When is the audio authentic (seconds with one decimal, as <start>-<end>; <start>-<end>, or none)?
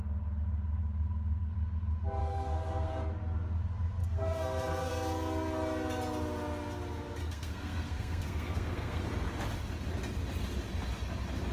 0.0-2.2; 3.0-4.0; 4.9-7.2; 9.0-11.5